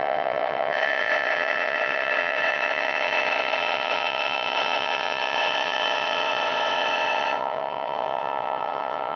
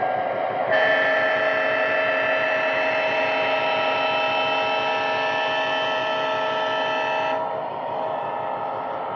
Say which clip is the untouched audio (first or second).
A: second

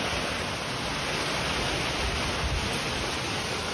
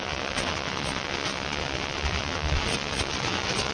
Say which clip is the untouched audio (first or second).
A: first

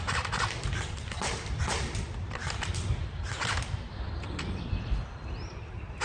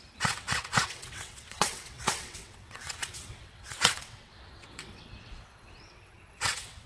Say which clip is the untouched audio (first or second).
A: first